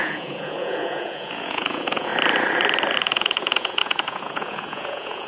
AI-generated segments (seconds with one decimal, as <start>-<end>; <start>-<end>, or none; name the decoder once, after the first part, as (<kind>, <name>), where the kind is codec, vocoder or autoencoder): 0.0-2.1 (vocoder, Vocos); 3.0-5.3